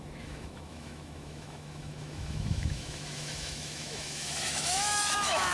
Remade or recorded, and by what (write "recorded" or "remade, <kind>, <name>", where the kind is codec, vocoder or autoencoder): remade, autoencoder, DAC-VAE